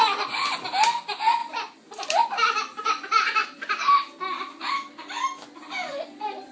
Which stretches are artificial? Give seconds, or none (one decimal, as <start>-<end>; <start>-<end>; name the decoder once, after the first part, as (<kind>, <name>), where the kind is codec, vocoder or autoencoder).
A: 1.4-2.4 (vocoder, BigVGAN v2)